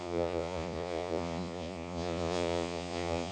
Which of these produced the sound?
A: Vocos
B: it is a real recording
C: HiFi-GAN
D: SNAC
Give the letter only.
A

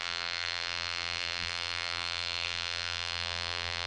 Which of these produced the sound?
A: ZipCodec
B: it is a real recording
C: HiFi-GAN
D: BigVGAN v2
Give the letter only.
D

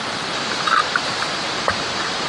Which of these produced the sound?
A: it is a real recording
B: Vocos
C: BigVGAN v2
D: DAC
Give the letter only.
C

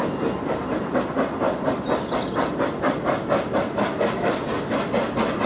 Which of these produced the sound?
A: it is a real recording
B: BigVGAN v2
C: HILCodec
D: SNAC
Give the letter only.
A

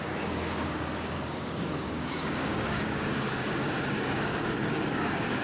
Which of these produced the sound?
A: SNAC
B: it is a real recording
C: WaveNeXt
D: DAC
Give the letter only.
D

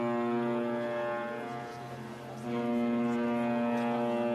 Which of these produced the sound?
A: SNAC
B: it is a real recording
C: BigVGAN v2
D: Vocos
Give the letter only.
B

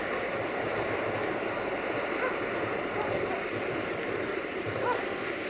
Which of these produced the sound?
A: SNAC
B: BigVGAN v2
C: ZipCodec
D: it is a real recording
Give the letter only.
D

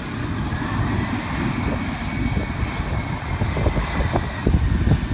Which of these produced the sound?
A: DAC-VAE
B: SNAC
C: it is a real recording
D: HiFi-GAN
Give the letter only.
C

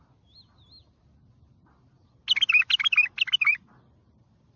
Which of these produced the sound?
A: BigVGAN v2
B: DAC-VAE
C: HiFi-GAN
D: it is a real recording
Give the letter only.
D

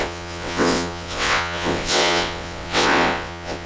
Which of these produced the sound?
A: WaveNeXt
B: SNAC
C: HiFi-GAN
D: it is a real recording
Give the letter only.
A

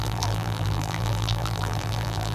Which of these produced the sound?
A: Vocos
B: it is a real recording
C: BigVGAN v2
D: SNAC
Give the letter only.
C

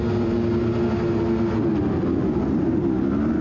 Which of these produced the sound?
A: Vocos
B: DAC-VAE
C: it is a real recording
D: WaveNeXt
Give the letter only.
C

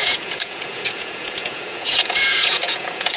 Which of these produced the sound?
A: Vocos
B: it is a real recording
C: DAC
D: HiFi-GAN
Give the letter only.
A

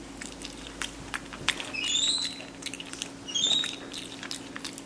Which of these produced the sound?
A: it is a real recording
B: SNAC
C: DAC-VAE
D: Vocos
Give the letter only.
A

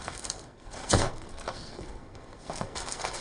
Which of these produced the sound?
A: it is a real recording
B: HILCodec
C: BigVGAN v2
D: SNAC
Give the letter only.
D